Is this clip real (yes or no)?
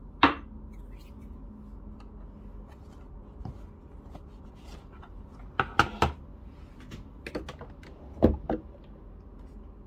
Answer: yes